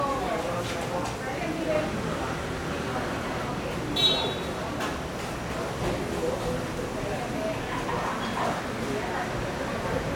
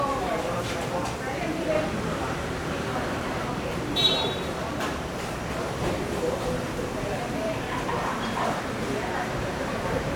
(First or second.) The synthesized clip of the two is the second